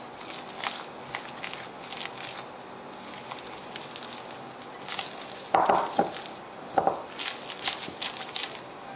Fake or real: real